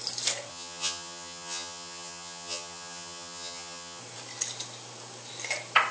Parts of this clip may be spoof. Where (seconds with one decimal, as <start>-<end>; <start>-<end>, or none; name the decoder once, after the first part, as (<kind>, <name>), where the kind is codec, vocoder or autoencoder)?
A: 0.5-4.0 (vocoder, HiFi-GAN)